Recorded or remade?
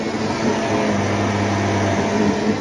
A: recorded